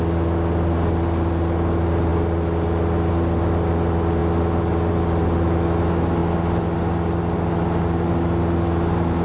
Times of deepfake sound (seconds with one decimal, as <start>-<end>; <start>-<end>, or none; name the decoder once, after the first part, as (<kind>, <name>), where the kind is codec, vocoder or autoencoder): none